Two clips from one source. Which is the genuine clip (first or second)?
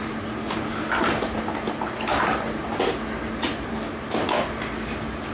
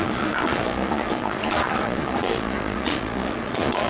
first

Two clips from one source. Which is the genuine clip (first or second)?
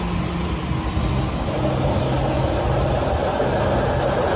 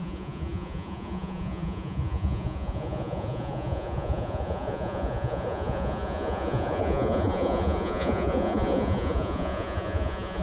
first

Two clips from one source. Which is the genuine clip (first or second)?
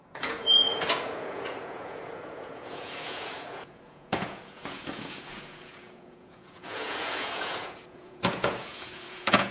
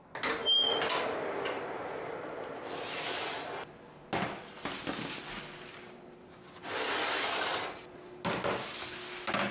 second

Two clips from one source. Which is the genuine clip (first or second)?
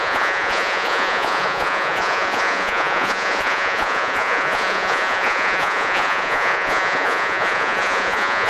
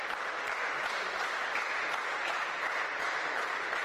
second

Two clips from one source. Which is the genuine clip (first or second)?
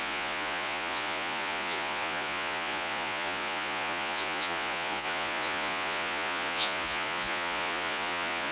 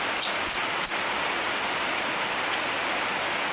second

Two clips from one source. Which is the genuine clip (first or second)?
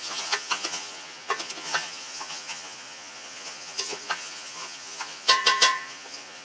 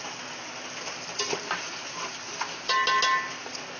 second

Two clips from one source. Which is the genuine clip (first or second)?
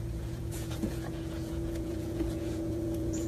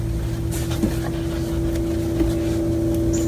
second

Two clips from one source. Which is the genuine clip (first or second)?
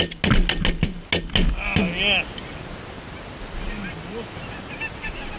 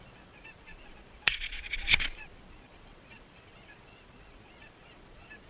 first